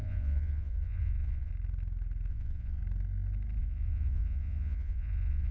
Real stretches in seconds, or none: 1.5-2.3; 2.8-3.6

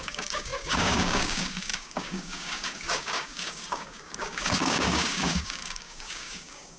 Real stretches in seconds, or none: none

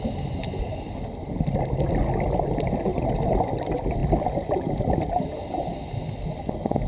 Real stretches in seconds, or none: 0.0-4.0; 4.9-6.9